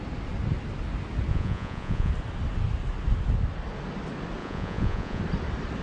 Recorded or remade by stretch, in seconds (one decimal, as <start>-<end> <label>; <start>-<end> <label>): 0.0-1.3 recorded; 1.3-2.1 remade; 2.1-4.4 recorded; 4.4-5.2 remade; 5.2-5.8 recorded